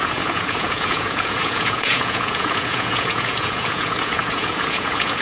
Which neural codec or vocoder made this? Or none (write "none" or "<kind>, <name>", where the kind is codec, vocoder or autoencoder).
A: vocoder, Vocos